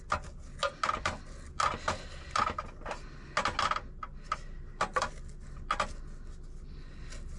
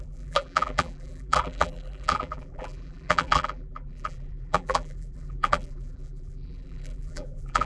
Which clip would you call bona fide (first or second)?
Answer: first